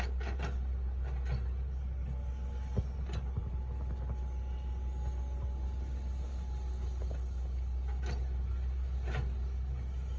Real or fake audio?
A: real